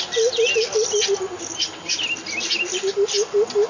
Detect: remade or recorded recorded